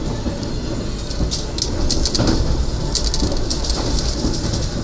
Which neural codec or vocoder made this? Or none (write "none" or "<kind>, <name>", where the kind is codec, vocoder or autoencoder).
none